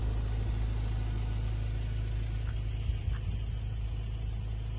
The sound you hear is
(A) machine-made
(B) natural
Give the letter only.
B